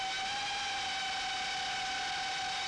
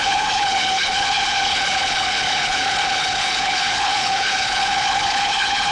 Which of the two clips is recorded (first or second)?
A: first